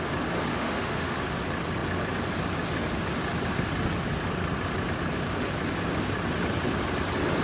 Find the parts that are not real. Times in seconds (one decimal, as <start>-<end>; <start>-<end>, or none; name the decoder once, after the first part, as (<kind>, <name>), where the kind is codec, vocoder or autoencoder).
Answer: 0.5-1.2 (autoencoder, DAC-VAE)